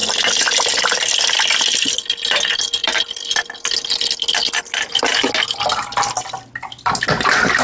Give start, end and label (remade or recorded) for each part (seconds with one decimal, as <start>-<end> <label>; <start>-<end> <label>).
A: 0.0-7.6 recorded